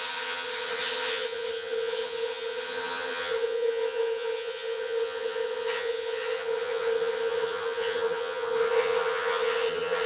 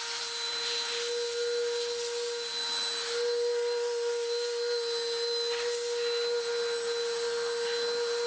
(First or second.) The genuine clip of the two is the second